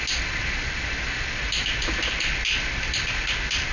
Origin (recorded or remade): recorded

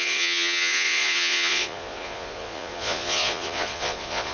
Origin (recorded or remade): remade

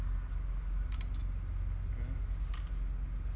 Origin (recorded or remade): recorded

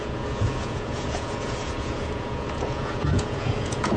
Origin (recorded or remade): remade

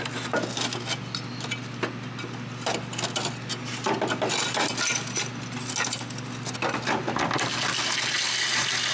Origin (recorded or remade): recorded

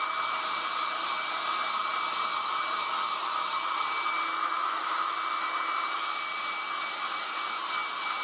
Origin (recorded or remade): recorded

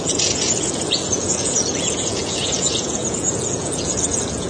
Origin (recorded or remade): remade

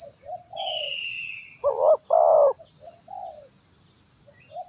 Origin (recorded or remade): recorded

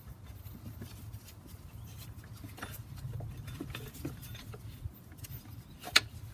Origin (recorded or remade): recorded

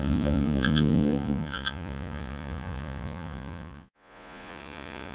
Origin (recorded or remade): remade